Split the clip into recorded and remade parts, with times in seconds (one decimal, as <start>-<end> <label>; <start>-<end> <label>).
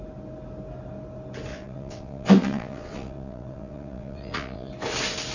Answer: 0.0-1.5 recorded; 1.5-4.7 remade; 4.7-5.3 recorded